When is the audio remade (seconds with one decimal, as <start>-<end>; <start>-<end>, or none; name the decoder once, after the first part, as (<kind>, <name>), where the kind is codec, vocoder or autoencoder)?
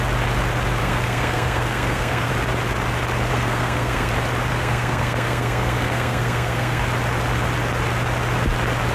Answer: 0.8-2.3 (codec, SNAC); 3.3-4.1; 4.5-6.8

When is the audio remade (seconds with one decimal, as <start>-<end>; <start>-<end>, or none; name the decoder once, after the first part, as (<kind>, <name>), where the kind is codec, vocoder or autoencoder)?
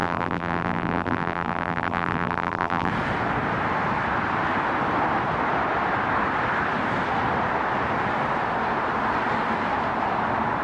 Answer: 0.0-2.9 (vocoder, BigVGAN v2)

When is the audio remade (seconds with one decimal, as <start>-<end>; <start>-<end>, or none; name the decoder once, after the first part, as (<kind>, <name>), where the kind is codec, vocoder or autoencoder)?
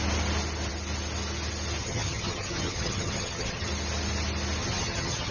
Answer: 1.8-3.7 (vocoder, HiFi-GAN); 4.6-5.3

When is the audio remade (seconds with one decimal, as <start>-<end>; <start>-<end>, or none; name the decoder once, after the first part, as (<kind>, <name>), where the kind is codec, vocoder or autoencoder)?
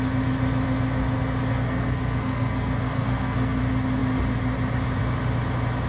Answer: 1.5-3.6 (codec, SNAC)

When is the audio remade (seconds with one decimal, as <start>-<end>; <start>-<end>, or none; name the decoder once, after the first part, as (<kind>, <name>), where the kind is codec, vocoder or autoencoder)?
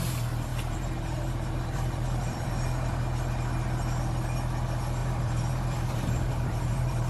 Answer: 0.5-2.7 (vocoder, BigVGAN v2); 5.0-7.1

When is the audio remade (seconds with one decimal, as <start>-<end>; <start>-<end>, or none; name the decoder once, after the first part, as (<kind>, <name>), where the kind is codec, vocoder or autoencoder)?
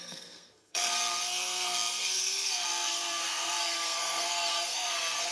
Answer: 0.0-5.3 (codec, SNAC)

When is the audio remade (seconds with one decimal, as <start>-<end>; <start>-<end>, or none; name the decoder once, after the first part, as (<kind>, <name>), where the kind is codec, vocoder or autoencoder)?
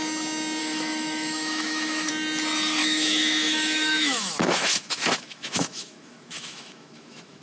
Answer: 0.6-2.1 (autoencoder, DAC-VAE); 2.8-7.4